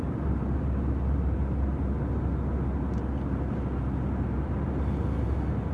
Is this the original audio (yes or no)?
yes